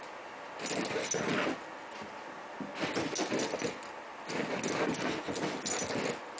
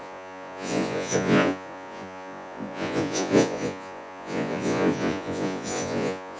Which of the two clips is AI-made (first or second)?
second